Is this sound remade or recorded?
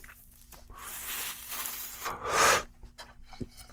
recorded